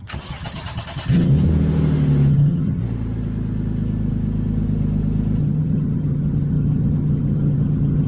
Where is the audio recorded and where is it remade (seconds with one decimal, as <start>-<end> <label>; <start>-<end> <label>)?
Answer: 0.0-1.3 remade; 1.3-2.3 recorded; 2.3-2.8 remade; 2.8-5.4 recorded; 5.4-8.1 remade